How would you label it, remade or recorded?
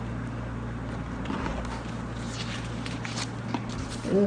recorded